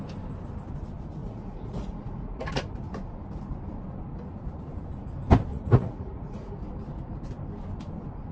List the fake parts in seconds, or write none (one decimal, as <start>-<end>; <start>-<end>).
1.2-2.6; 5.5-6.6